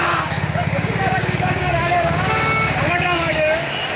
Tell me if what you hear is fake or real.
fake